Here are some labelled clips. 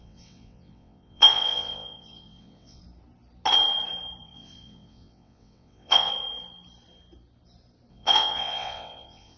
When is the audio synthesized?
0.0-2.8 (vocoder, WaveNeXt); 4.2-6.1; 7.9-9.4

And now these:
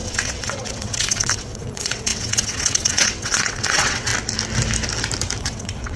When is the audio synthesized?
0.0-4.1 (vocoder, WaveNeXt); 5.4-6.0